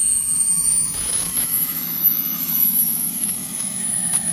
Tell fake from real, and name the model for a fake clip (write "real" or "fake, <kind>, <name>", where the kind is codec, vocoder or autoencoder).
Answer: fake, autoencoder, DAC-VAE